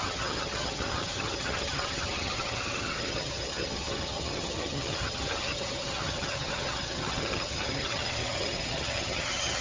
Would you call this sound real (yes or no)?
no